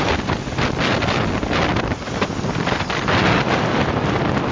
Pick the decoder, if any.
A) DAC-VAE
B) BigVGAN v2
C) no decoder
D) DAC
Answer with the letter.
C